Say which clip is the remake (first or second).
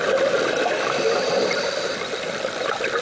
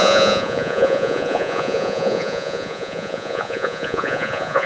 second